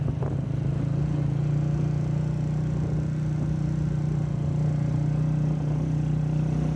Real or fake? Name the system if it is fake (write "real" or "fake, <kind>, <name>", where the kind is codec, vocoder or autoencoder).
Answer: real